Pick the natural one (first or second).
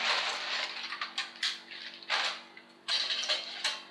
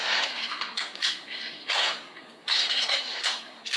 first